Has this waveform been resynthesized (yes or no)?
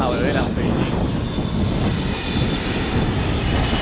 no